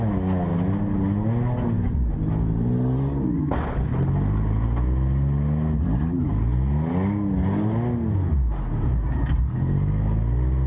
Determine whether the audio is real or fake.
real